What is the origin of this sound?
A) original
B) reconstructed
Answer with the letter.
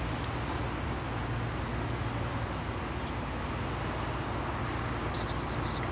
A